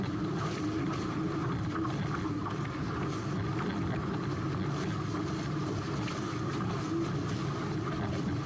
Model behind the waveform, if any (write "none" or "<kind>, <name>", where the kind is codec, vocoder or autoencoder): none